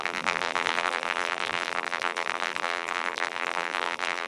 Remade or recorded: remade